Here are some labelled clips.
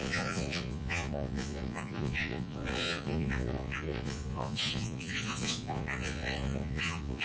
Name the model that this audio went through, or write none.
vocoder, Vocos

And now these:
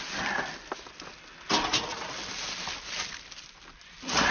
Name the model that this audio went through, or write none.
none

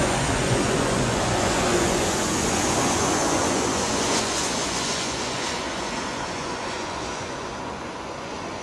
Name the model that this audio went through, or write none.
vocoder, Vocos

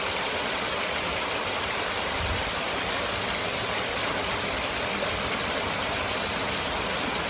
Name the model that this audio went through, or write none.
none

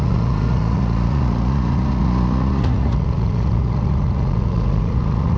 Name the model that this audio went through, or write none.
vocoder, Vocos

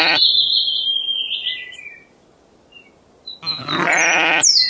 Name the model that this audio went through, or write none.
none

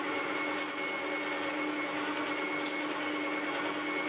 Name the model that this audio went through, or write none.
none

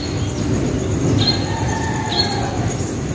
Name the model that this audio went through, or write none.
none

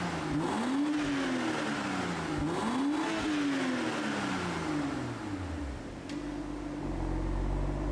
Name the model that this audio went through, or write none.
none